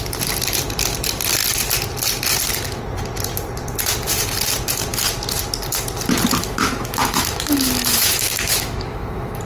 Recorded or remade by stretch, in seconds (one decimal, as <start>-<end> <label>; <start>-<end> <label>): 0.0-6.4 recorded; 6.4-9.4 remade